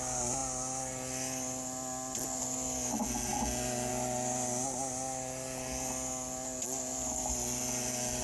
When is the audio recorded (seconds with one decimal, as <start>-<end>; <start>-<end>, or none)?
0.0-8.2